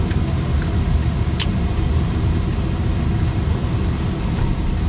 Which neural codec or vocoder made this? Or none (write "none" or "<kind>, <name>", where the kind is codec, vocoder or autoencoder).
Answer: none